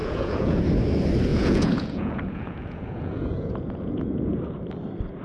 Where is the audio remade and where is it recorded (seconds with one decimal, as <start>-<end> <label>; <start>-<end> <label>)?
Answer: 0.0-0.6 remade; 0.6-1.3 recorded; 1.3-4.4 remade; 4.4-5.2 recorded